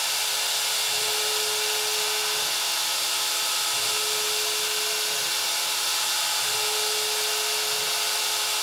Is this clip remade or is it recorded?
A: recorded